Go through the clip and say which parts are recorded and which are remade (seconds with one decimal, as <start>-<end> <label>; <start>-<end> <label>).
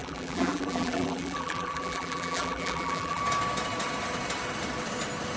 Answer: 0.0-3.2 remade; 3.2-5.4 recorded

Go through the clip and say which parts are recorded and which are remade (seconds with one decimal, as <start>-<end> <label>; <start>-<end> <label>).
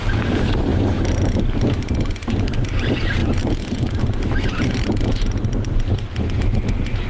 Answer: 0.0-7.1 recorded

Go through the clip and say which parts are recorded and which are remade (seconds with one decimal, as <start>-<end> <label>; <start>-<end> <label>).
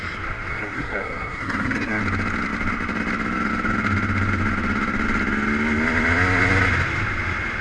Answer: 0.0-0.5 recorded; 0.5-2.0 remade; 2.0-7.6 recorded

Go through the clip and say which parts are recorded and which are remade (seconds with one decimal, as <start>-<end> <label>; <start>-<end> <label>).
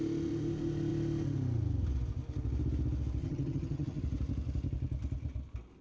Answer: 0.0-3.2 recorded; 3.2-4.0 remade; 4.0-5.8 recorded